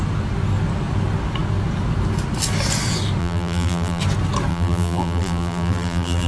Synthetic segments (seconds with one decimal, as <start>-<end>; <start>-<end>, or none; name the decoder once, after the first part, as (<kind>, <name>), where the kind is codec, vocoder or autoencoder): 3.2-4.0 (vocoder, BigVGAN v2); 4.5-6.3